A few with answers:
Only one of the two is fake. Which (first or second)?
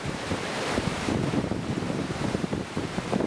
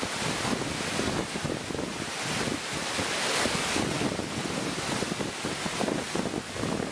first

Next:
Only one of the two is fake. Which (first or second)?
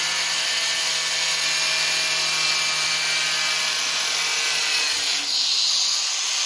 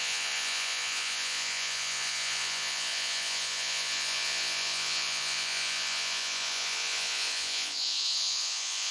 second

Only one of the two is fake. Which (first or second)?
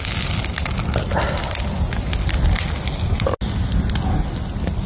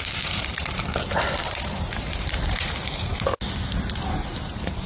second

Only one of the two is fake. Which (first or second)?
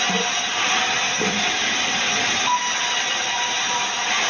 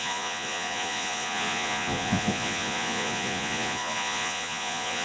second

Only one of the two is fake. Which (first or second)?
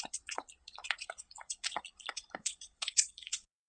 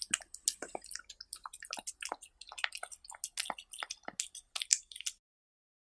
first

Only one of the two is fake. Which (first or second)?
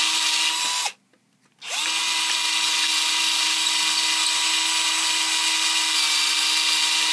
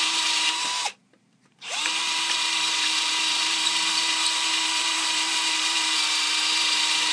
second